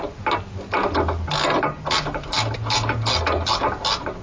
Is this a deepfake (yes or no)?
no